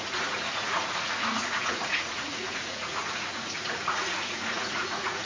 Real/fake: fake